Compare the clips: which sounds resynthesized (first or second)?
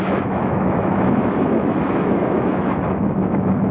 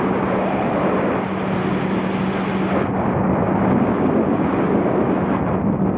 first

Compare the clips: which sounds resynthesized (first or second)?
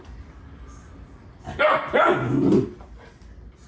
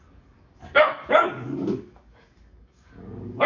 second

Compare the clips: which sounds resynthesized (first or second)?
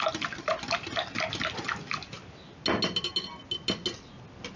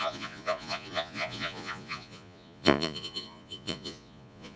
second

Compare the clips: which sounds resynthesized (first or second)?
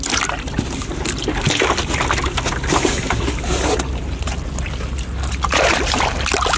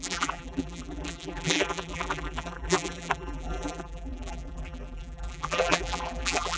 second